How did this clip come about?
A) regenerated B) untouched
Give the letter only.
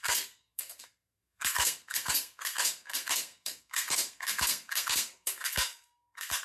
A